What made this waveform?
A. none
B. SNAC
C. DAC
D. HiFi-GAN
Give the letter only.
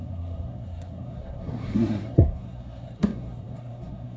B